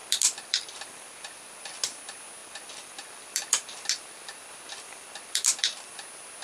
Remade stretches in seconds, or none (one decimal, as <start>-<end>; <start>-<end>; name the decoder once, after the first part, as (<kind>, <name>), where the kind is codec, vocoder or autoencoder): 0.0-1.6 (vocoder, BigVGAN v2); 2.4-5.9